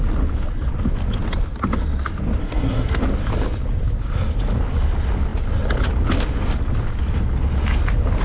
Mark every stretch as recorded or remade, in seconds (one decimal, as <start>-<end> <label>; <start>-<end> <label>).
0.0-2.4 recorded; 2.4-3.0 remade; 3.0-8.2 recorded